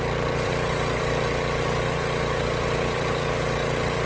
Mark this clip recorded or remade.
remade